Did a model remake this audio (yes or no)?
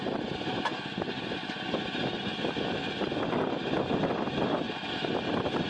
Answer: no